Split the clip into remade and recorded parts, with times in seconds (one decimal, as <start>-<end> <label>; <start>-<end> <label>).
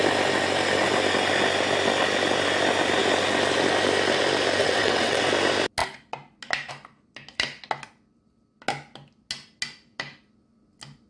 0.0-4.6 recorded; 4.6-5.2 remade; 5.2-11.1 recorded